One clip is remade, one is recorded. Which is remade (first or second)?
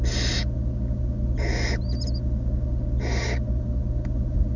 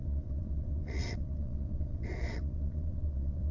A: second